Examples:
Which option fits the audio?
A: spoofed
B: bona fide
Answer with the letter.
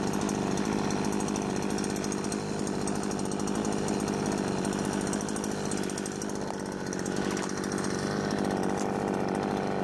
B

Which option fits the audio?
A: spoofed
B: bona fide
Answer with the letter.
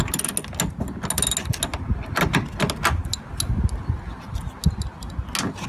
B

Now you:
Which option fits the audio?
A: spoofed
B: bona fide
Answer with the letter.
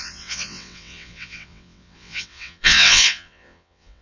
A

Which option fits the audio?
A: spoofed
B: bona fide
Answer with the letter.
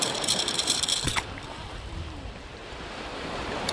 A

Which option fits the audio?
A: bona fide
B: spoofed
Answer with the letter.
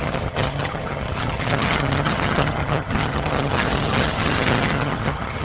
B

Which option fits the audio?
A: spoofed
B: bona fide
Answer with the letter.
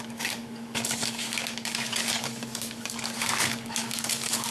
A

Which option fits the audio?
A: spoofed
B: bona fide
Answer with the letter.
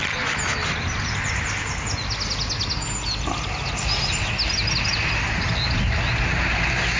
B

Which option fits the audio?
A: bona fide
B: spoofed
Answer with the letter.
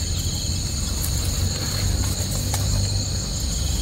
A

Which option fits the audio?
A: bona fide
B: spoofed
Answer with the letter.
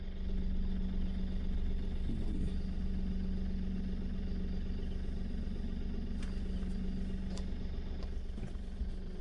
A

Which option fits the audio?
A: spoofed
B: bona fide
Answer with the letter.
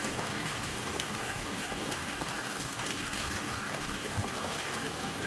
A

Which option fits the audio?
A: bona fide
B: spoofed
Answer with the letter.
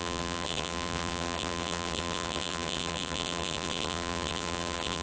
B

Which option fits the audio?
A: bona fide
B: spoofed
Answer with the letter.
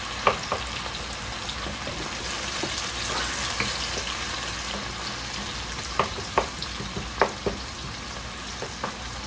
A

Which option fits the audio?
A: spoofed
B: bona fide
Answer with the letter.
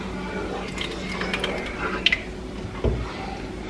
B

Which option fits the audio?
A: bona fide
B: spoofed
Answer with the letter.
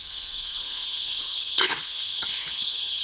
B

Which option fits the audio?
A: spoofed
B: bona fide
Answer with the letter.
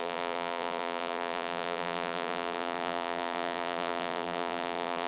A